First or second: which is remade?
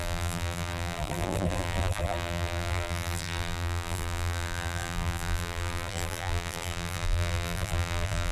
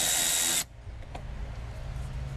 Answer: first